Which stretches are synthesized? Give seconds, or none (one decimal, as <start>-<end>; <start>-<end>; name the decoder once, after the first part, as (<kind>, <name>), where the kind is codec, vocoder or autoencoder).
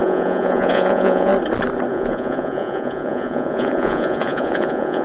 0.0-1.3 (vocoder, Vocos); 1.9-5.0